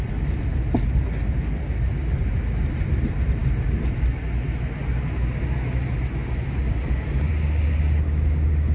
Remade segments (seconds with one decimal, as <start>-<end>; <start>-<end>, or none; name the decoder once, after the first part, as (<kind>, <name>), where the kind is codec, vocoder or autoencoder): none